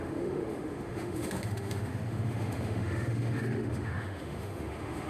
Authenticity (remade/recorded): remade